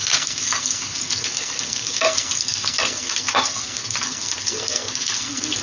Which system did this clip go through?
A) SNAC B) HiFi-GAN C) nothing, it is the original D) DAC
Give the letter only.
A